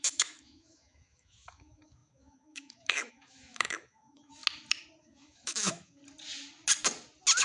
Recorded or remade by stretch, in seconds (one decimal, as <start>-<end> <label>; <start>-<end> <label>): 0.0-4.4 remade; 4.4-5.0 recorded; 5.0-6.0 remade; 6.0-7.4 recorded